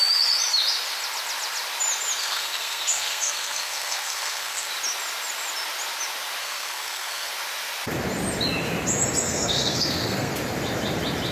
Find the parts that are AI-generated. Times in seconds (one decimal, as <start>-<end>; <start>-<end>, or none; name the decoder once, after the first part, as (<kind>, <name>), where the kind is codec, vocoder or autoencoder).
2.2-4.7 (codec, SNAC); 6.4-7.3; 9.2-10.3